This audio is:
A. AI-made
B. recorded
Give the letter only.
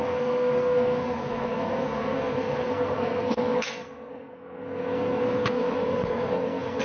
A